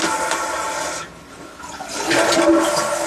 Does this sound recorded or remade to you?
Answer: recorded